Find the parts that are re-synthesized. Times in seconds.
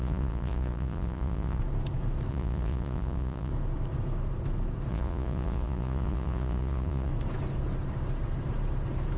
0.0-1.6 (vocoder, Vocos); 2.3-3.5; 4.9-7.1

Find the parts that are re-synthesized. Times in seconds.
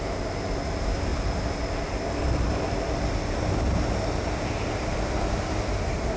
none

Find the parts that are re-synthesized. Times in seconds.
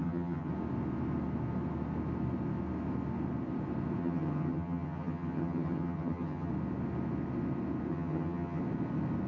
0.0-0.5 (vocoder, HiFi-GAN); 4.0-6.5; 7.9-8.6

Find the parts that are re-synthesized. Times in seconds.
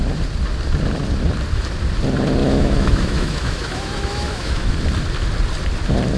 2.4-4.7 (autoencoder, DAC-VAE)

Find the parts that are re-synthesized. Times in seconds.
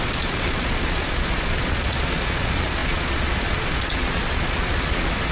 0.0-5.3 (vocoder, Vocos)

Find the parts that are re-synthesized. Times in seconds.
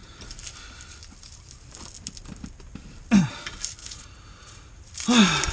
3.8-4.8 (vocoder, Vocos)